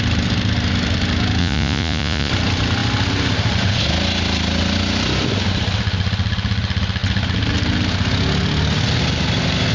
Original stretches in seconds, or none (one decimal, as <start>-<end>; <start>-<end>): 0.0-1.4; 2.3-9.7